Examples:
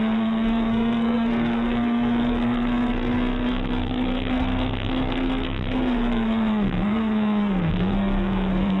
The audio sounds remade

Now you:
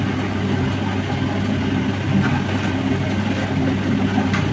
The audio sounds recorded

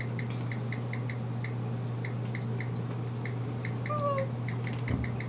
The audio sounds recorded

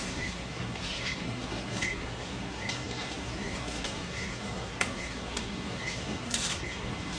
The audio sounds remade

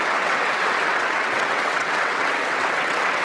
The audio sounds remade